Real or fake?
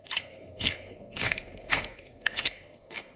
fake